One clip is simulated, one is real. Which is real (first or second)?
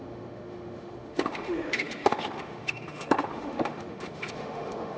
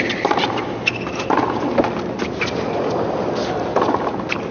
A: second